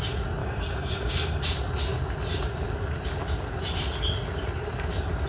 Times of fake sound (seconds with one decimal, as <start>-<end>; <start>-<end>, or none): 0.4-1.4